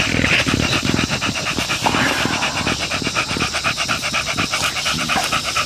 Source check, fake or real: real